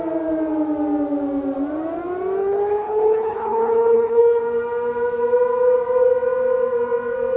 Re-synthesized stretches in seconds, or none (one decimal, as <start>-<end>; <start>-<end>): 2.4-4.4